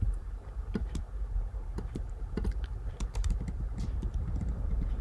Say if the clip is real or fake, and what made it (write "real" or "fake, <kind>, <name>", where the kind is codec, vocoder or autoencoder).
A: fake, vocoder, BigVGAN v2